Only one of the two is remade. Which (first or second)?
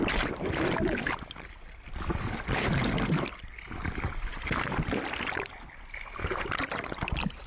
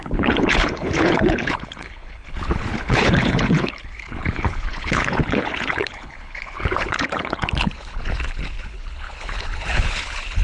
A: second